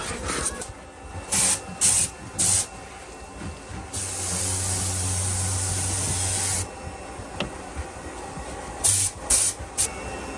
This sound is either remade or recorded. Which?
recorded